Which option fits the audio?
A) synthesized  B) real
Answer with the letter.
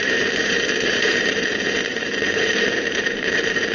A